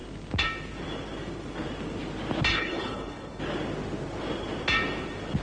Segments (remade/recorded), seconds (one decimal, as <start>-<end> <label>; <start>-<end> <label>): 0.0-2.5 recorded; 2.5-3.4 remade; 3.4-5.4 recorded